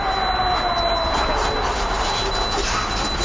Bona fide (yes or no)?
yes